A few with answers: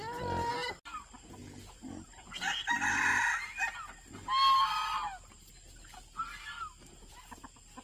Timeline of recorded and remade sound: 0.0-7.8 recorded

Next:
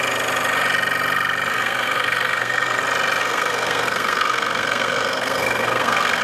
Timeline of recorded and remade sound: 0.0-1.5 recorded; 1.5-2.8 remade; 2.8-3.2 recorded; 3.2-6.2 remade

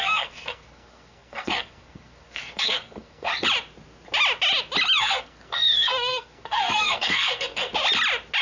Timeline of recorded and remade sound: 0.0-3.3 remade; 3.3-5.0 recorded; 5.0-7.7 remade; 7.7-8.4 recorded

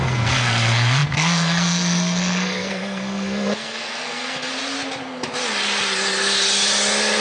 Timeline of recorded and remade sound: 0.0-4.5 remade; 4.5-7.2 recorded

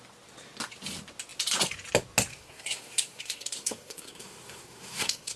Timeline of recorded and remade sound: 0.0-2.3 recorded; 2.3-5.4 remade

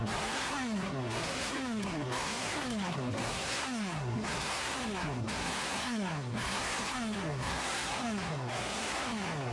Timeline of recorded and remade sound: 0.0-9.5 remade

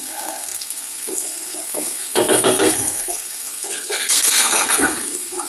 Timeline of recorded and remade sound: 0.0-5.5 remade

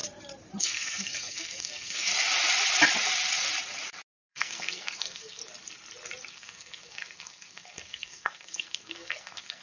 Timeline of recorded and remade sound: 0.0-0.6 recorded; 0.6-2.1 remade; 2.1-4.3 recorded; 4.3-5.4 remade; 5.4-6.3 recorded; 6.3-9.6 remade